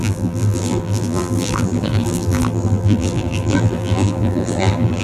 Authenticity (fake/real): fake